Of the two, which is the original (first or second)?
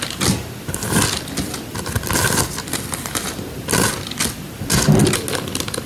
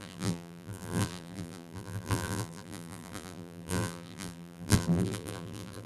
first